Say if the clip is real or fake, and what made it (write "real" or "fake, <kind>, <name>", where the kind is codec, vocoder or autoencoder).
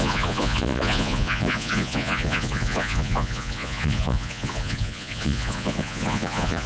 fake, vocoder, Vocos